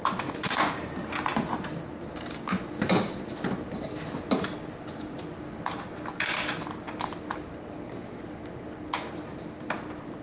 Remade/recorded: recorded